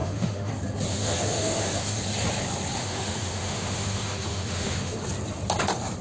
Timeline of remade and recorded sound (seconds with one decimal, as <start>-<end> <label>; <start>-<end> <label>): 0.0-0.5 remade; 0.5-0.9 recorded; 0.9-2.0 remade; 2.0-2.8 recorded; 2.8-5.0 remade; 5.0-6.0 recorded